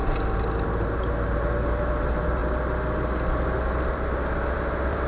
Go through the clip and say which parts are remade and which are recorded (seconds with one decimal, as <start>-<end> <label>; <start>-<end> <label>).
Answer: 0.0-2.4 remade; 2.4-4.5 recorded; 4.5-5.1 remade